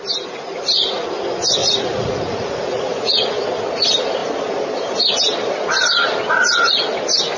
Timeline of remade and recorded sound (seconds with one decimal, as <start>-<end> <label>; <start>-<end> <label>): 0.0-1.6 recorded; 1.6-3.3 remade; 3.3-7.4 recorded

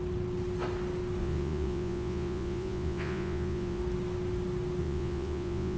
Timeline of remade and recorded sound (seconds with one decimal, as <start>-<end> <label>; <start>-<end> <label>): 0.0-1.2 recorded; 1.2-3.8 remade; 3.8-4.8 recorded; 4.8-5.8 remade

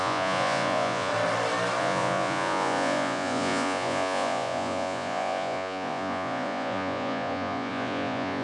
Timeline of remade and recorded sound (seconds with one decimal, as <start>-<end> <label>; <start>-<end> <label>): 0.0-1.1 remade; 1.1-1.8 recorded; 1.8-8.4 remade